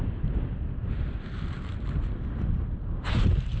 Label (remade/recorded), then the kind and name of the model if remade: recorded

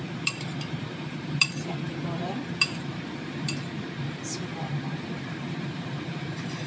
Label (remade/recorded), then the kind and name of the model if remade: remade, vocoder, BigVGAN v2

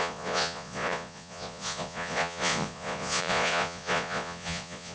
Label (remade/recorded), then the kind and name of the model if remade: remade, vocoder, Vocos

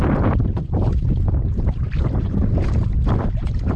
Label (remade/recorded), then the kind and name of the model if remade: remade, vocoder, BigVGAN v2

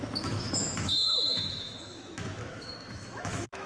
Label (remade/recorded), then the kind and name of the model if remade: remade, autoencoder, DAC-VAE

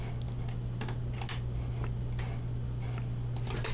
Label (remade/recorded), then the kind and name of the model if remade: recorded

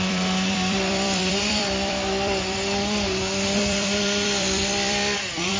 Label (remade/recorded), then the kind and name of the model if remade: remade, vocoder, BigVGAN v2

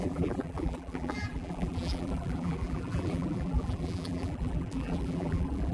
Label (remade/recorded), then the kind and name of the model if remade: remade, vocoder, BigVGAN v2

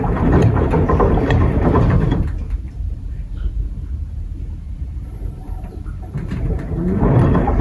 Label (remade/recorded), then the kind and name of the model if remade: remade, vocoder, BigVGAN v2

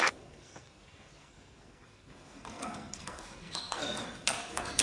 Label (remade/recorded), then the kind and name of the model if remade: remade, codec, SNAC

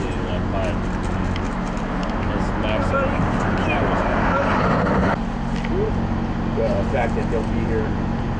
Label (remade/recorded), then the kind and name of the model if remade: recorded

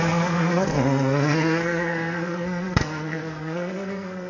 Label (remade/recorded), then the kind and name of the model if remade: remade, codec, SNAC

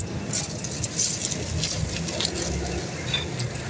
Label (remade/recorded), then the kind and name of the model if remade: recorded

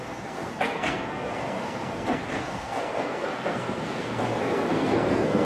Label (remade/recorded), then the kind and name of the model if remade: remade, codec, SNAC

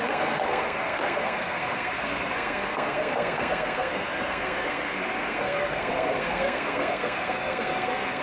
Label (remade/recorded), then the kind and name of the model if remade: remade, codec, SNAC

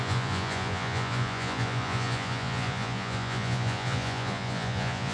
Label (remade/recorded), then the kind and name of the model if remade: remade, vocoder, Vocos